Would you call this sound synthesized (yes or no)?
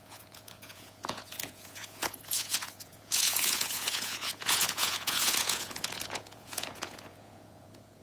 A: yes